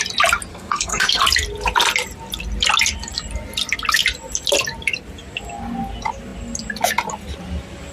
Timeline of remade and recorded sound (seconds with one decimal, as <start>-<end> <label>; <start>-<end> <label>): 0.0-0.5 recorded; 0.5-1.2 remade; 1.2-7.9 recorded